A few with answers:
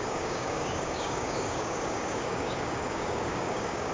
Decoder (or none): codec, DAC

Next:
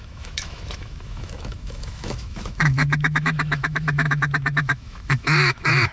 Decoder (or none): autoencoder, DAC-VAE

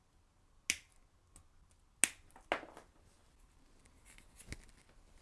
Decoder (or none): none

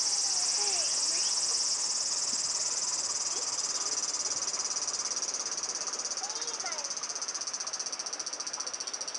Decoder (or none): none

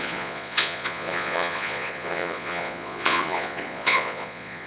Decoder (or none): vocoder, Vocos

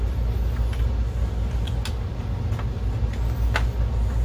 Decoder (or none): none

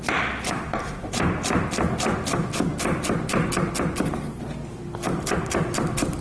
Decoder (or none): none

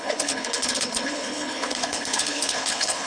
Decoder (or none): codec, HILCodec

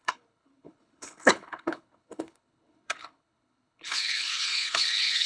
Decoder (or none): codec, HILCodec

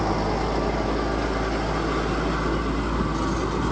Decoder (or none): none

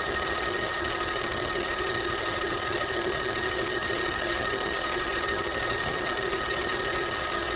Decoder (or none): vocoder, HiFi-GAN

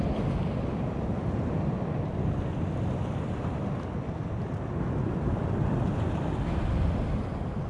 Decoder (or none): none